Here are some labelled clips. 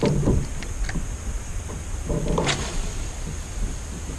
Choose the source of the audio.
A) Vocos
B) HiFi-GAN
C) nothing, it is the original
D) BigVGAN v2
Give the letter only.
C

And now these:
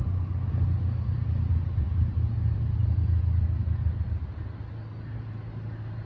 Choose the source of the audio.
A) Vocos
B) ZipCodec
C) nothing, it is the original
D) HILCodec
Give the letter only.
C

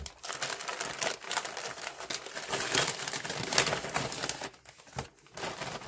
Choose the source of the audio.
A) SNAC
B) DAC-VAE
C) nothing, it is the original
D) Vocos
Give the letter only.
C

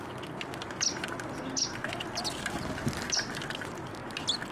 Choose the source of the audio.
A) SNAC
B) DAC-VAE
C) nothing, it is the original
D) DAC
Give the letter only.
C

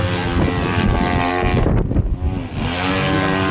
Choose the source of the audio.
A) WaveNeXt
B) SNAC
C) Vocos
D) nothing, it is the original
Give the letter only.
D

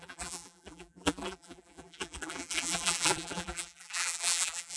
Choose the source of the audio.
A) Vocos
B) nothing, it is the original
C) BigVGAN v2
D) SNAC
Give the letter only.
C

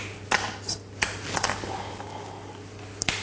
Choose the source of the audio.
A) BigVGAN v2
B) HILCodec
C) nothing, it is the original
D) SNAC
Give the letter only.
C